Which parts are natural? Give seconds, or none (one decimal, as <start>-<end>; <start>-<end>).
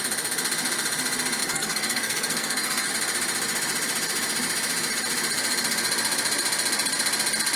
0.0-1.4; 2.9-7.6